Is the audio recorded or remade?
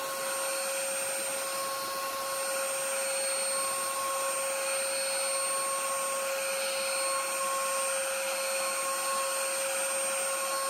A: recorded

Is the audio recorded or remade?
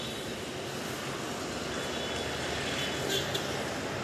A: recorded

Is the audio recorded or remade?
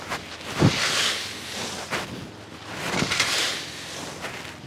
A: recorded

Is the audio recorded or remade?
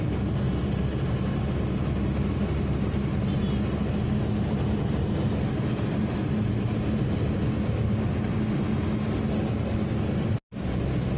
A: recorded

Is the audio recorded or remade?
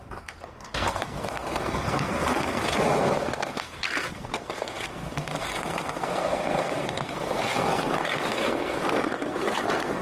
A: remade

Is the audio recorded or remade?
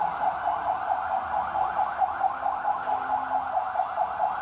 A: recorded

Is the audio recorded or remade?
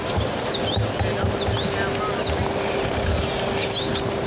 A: recorded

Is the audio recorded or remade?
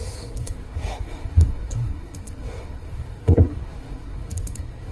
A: remade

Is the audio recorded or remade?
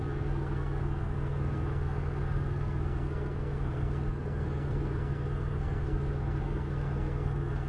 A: remade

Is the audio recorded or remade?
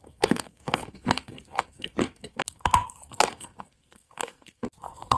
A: remade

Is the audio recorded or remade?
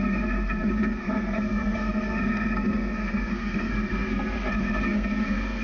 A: remade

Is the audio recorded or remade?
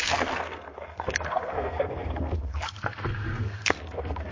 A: remade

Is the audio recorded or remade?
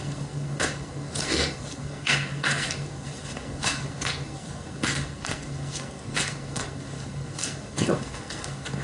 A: remade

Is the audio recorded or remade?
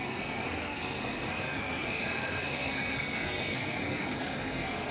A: remade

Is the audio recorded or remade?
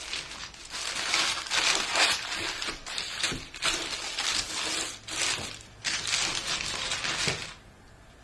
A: recorded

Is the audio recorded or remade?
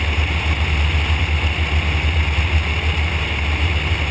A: recorded